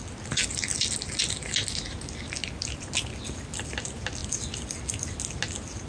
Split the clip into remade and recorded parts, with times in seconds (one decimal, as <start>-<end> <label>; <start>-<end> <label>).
0.0-5.9 recorded